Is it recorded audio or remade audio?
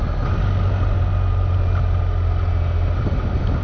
recorded